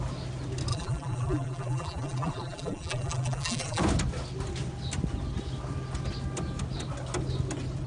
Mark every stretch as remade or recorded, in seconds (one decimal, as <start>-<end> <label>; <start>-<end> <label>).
0.0-0.7 recorded; 0.7-3.8 remade; 3.8-7.9 recorded